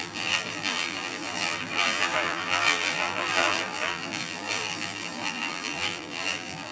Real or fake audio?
fake